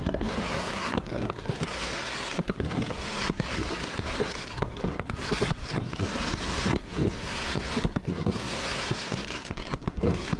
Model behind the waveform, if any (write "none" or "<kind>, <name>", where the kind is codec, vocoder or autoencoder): codec, SNAC